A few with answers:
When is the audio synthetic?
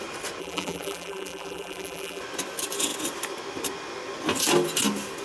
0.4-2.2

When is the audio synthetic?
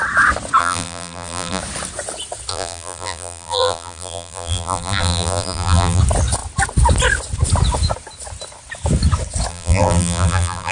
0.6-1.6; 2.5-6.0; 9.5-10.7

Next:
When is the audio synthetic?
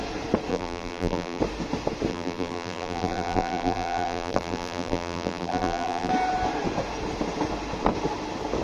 0.5-1.4; 2.1-6.1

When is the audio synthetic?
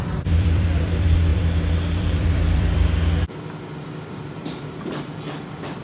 0.0-5.8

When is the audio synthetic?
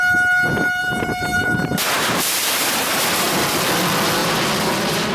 0.8-3.7; 4.2-5.1